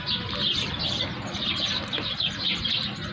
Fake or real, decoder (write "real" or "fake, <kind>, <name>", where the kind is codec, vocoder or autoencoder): real